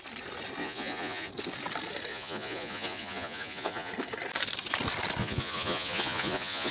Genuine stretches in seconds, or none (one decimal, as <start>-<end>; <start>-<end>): 0.0-0.6; 1.3-2.1; 3.9-5.2